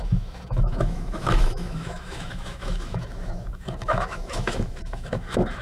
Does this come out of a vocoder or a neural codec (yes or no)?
yes